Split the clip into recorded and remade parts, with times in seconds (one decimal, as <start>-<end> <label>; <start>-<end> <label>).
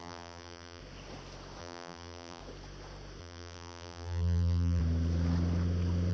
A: 0.0-0.8 remade; 0.8-1.6 recorded; 1.6-2.4 remade; 2.4-3.2 recorded; 3.2-4.8 remade; 4.8-6.1 recorded